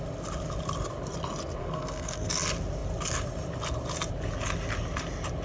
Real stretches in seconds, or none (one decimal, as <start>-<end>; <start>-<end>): 0.0-1.6; 2.3-5.4